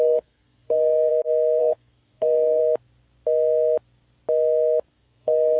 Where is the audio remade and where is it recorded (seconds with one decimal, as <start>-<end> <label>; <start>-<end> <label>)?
0.0-1.1 remade; 1.1-1.6 recorded; 1.6-2.6 remade; 2.6-4.9 recorded; 4.9-5.6 remade

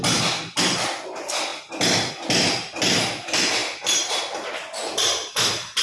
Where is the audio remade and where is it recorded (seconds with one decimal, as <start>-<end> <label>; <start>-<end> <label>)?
0.0-5.8 recorded